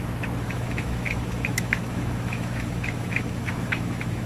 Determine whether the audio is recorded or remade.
remade